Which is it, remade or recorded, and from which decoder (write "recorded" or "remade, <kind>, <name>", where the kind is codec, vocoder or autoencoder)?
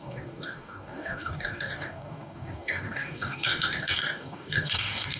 remade, codec, DAC